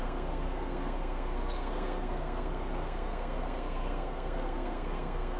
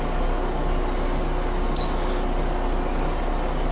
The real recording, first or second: second